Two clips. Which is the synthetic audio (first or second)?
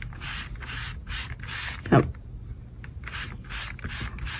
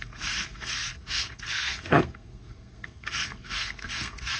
second